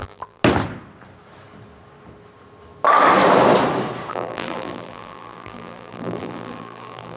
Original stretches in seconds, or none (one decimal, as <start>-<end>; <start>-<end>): 0.4-4.1